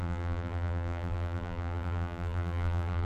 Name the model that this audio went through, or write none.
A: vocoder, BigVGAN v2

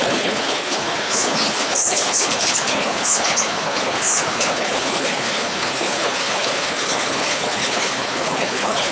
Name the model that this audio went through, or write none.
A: codec, HILCodec